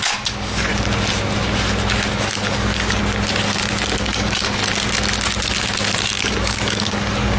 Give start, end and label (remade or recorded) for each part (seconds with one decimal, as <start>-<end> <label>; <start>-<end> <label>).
0.0-0.7 remade; 0.7-2.1 recorded; 2.1-3.0 remade; 3.0-4.0 recorded; 4.0-4.6 remade; 4.6-6.2 recorded; 6.2-7.4 remade